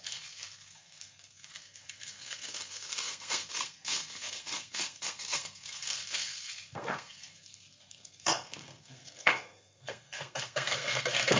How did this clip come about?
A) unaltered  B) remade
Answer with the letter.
B